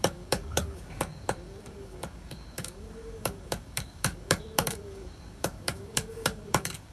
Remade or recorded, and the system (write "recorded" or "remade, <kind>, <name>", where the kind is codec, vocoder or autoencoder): remade, codec, DAC